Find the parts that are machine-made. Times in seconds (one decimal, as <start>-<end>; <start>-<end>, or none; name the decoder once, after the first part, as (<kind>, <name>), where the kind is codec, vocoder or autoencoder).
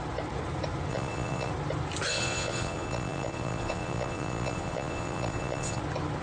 0.9-1.5 (vocoder, Vocos); 2.1-5.8